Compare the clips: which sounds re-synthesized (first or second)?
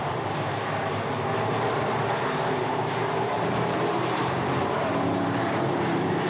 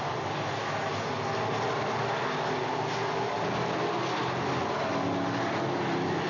first